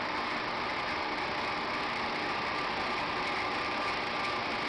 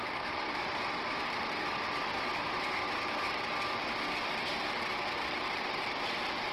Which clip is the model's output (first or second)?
second